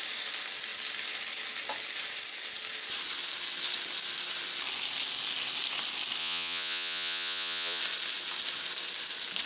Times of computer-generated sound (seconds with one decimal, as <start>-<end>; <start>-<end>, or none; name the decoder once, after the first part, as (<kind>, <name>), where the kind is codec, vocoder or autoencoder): 6.2-7.8 (vocoder, Vocos)